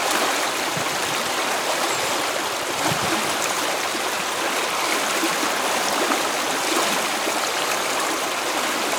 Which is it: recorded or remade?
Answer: recorded